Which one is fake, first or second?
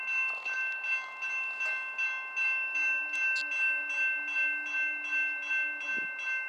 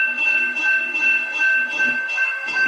second